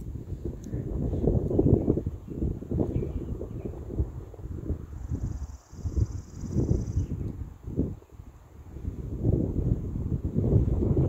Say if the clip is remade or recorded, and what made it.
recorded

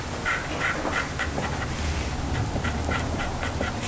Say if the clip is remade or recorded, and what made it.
recorded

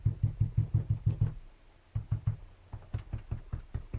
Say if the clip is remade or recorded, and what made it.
recorded